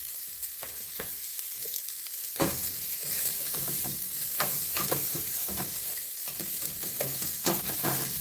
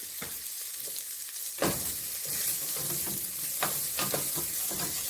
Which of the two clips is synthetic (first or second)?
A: first